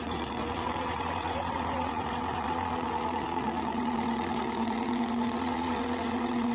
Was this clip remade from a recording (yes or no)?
yes